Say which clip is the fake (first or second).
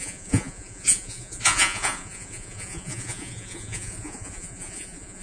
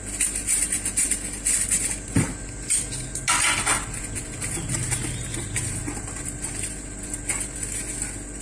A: first